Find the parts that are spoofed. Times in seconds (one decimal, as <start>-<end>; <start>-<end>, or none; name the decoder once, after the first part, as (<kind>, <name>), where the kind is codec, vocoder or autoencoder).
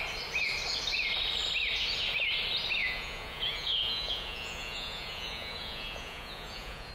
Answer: 2.8-6.9 (vocoder, Vocos)